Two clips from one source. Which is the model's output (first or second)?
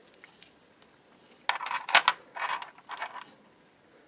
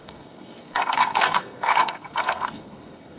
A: second